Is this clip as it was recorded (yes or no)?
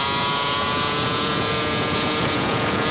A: no